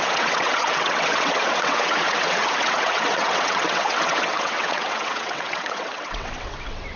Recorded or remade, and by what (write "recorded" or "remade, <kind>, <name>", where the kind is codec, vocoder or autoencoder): remade, vocoder, WaveNeXt